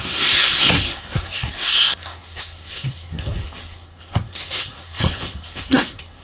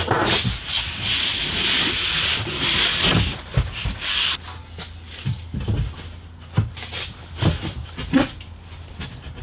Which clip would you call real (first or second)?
second